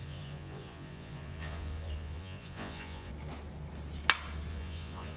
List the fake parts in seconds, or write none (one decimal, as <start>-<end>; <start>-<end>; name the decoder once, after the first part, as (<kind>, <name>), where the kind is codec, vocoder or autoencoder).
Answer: 0.0-3.1 (vocoder, Vocos); 4.5-5.2